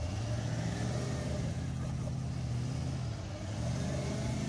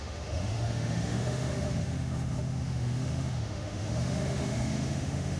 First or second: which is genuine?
first